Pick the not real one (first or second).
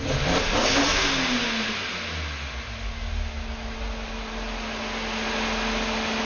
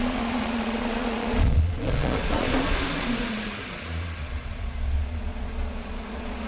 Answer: second